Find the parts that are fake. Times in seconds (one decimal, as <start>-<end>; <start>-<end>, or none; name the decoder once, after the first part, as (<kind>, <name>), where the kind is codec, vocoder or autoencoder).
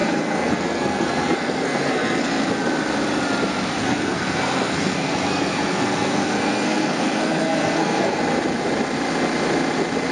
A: 0.0-2.4 (codec, SNAC); 3.8-8.2